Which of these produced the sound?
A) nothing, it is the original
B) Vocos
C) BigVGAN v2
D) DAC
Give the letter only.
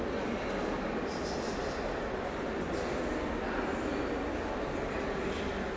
A